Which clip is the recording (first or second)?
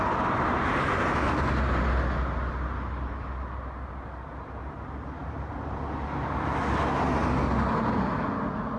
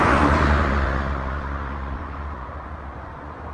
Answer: first